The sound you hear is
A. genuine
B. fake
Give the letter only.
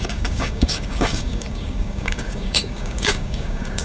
B